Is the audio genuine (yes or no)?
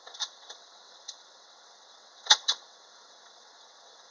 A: no